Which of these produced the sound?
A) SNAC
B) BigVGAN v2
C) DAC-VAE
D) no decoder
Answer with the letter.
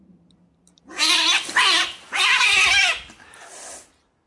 D